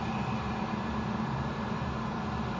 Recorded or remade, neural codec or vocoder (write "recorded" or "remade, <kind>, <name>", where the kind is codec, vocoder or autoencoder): recorded